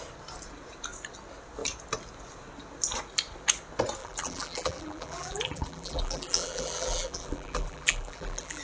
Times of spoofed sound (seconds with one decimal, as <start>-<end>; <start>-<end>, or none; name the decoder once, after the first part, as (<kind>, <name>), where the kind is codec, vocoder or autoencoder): 4.0-8.6 (vocoder, BigVGAN v2)